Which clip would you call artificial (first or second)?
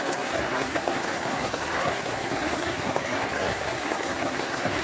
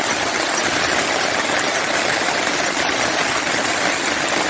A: first